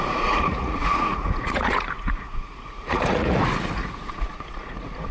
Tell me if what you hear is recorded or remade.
remade